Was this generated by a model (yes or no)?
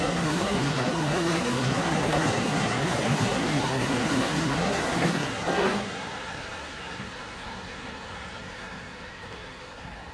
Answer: yes